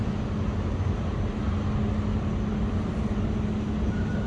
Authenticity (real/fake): real